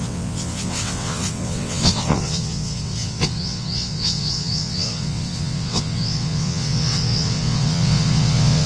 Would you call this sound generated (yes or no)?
yes